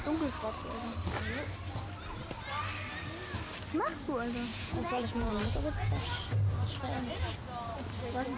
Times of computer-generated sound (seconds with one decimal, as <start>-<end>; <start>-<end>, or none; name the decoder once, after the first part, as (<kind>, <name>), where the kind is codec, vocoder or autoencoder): 4.5-5.3 (vocoder, Vocos)